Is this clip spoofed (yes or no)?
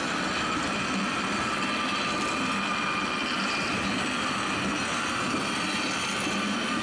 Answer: no